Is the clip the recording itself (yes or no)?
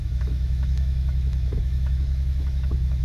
no